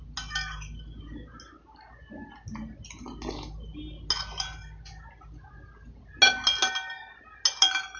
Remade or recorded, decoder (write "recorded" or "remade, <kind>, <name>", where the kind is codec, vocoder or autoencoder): recorded